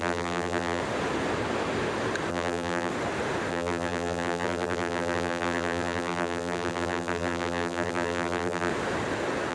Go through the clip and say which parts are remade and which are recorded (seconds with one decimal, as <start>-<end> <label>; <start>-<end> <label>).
0.0-0.8 remade; 0.8-2.3 recorded; 2.3-2.9 remade; 2.9-3.5 recorded; 3.5-8.7 remade; 8.7-9.5 recorded